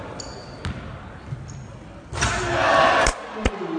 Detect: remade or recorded recorded